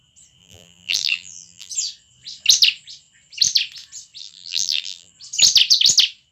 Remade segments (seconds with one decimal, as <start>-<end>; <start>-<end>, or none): 0.4-1.7; 4.2-5.1